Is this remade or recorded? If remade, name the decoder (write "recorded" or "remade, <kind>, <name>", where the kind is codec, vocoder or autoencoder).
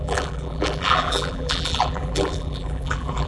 remade, vocoder, BigVGAN v2